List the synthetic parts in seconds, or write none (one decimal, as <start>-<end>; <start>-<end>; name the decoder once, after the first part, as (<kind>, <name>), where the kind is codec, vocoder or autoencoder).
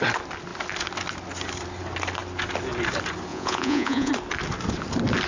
3.3-4.1 (vocoder, Vocos)